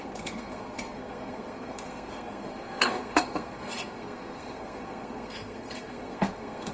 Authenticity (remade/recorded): remade